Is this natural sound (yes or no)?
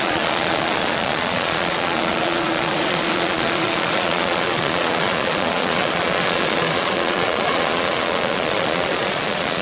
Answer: no